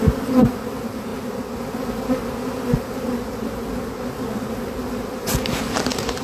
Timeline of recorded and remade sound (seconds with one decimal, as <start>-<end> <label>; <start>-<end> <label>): 0.0-1.1 remade; 1.1-4.1 recorded; 4.1-6.2 remade